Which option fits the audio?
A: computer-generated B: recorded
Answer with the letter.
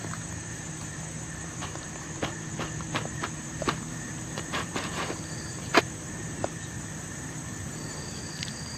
A